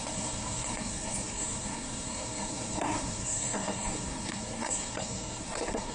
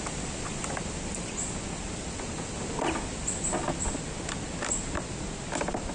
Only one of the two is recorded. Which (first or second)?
second